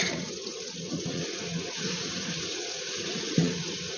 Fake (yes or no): yes